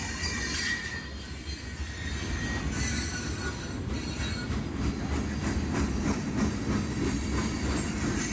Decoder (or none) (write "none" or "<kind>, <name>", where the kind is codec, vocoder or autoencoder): none